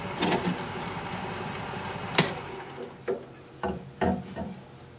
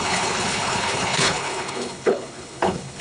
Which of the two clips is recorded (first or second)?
first